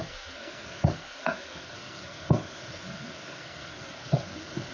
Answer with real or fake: fake